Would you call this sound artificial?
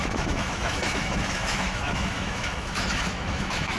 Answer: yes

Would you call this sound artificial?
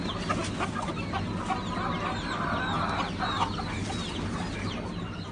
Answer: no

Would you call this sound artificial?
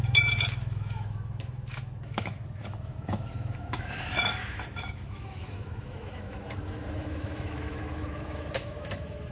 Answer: yes